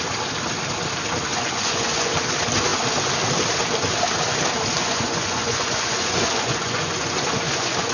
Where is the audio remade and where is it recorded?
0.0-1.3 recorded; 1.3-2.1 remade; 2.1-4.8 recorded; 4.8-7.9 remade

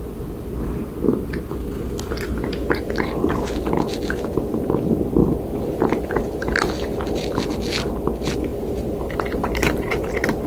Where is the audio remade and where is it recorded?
0.0-1.1 recorded; 1.1-2.2 remade; 2.2-5.2 recorded; 5.2-6.8 remade; 6.8-8.5 recorded; 8.5-10.1 remade; 10.1-10.5 recorded

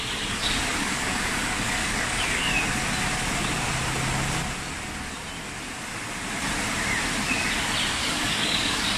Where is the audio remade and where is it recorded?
0.0-0.8 recorded; 0.8-2.6 remade; 2.6-8.0 recorded; 8.0-9.0 remade

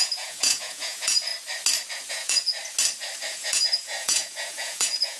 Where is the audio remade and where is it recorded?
0.0-1.3 remade; 1.3-2.1 recorded; 2.1-2.5 remade; 2.5-3.3 recorded; 3.3-5.2 remade